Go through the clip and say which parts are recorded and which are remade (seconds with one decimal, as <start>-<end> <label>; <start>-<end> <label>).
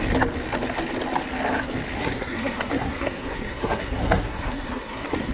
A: 0.0-2.0 recorded; 2.0-5.3 remade